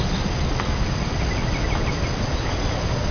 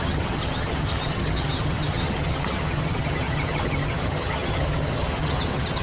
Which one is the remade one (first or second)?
second